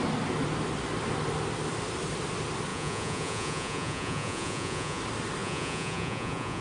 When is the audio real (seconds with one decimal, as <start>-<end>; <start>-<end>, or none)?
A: 0.0-2.7; 5.0-5.4